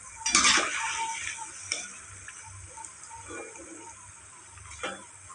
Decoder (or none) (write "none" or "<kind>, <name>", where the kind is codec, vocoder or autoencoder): none